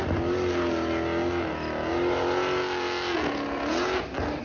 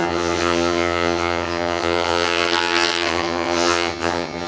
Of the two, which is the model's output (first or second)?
second